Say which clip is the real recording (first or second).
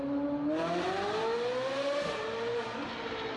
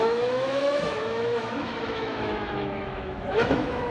first